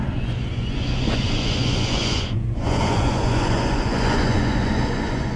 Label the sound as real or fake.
fake